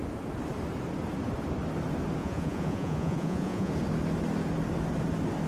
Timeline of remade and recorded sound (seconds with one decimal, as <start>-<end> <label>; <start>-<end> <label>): 0.0-2.2 recorded; 2.2-3.7 remade; 3.7-5.5 recorded